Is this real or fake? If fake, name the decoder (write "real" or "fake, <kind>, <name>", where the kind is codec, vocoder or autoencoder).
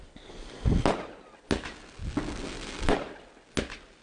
real